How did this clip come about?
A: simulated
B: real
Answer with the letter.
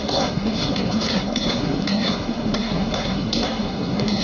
A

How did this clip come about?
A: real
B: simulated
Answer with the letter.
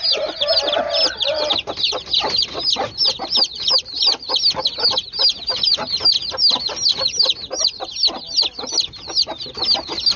A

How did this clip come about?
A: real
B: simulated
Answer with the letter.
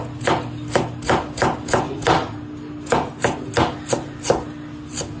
A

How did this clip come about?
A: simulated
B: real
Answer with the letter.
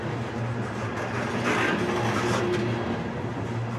B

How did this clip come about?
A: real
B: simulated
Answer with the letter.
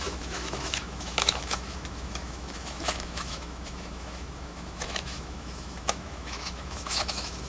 B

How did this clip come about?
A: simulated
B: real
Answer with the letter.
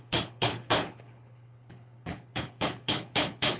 A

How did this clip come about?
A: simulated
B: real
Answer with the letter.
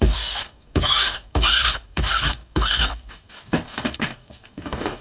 A